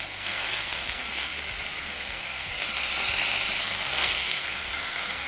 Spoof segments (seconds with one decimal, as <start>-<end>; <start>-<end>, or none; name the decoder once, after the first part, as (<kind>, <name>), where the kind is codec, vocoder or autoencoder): 0.0-1.3 (codec, SNAC); 1.8-2.5; 3.6-5.3